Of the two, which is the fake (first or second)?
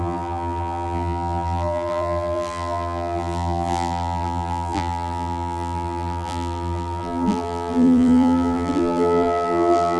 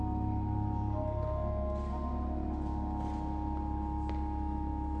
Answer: first